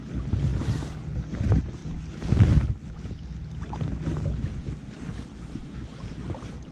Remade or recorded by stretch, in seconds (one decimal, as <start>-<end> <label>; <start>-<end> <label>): 0.0-5.1 recorded; 5.1-6.7 remade